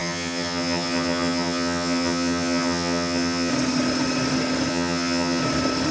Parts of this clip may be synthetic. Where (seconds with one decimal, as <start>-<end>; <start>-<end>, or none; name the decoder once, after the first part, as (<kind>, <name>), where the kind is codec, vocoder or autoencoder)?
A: 0.0-3.5 (vocoder, HiFi-GAN); 4.7-5.4